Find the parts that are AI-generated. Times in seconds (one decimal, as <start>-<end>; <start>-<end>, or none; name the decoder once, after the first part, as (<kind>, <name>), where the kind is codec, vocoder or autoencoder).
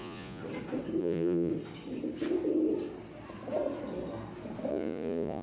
0.0-0.4 (vocoder, Vocos); 1.0-1.5; 4.7-5.4